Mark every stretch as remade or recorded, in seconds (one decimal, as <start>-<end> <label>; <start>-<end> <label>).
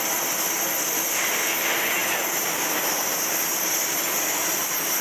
0.0-5.0 recorded